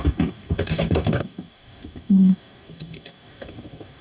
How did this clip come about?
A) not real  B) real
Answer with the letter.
A